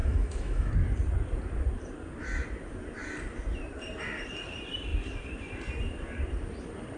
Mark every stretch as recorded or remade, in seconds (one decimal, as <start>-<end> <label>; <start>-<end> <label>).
0.0-0.7 remade; 0.7-7.0 recorded